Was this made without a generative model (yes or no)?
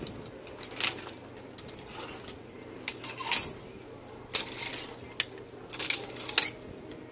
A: yes